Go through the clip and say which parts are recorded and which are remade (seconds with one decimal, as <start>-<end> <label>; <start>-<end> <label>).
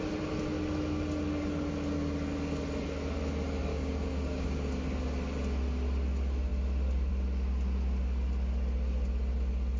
0.0-3.7 recorded; 3.7-4.7 remade; 4.7-9.8 recorded